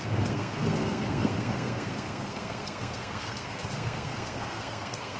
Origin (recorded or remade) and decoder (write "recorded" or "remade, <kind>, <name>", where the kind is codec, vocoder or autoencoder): remade, codec, SNAC